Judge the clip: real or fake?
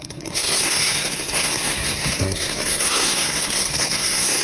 fake